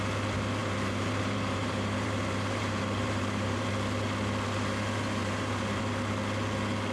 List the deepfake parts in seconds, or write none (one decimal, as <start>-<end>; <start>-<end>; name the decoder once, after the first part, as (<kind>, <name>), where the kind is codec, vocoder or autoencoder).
0.6-3.7 (vocoder, BigVGAN v2); 5.2-5.8